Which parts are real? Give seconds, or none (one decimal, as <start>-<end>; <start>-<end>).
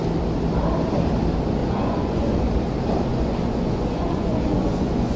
0.0-1.6; 2.5-3.1